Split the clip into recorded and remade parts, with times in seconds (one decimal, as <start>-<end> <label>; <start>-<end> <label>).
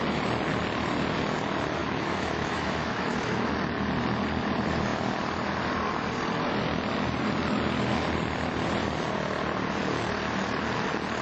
0.0-1.8 recorded; 1.8-3.5 remade; 3.5-11.2 recorded